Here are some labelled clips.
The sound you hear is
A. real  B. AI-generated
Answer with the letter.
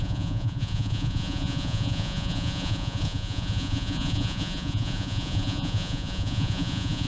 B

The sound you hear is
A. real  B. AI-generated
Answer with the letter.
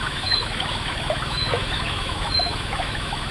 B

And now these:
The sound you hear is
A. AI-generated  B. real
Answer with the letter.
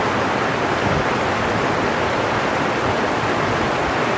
B